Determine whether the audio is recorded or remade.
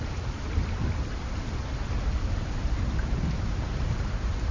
recorded